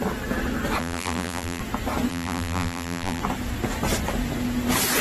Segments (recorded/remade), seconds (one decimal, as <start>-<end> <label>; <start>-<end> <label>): 0.0-0.8 recorded; 0.8-1.6 remade; 1.6-2.1 recorded; 2.1-3.2 remade; 3.2-5.0 recorded